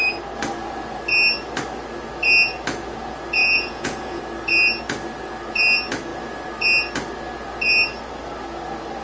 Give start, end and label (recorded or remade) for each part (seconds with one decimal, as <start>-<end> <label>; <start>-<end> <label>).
0.0-3.4 recorded; 3.4-4.2 remade; 4.2-9.0 recorded